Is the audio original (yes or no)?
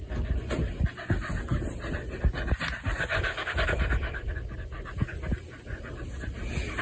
yes